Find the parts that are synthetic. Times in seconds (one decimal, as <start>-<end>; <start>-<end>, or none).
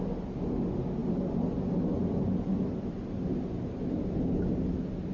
none